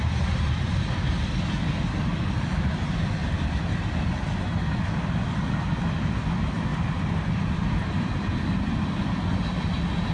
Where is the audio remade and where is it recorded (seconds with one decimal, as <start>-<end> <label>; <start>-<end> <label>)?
0.0-10.1 recorded